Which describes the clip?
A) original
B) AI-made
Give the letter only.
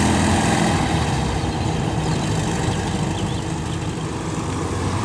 A